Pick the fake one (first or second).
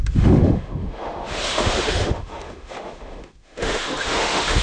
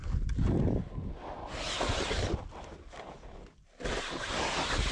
first